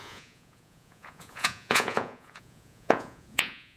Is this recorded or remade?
remade